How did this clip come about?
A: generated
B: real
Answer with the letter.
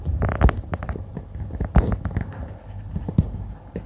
B